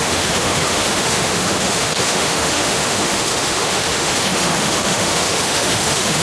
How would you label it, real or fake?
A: fake